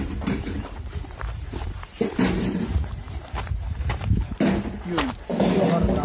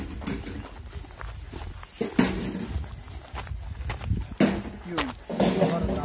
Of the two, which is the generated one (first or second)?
first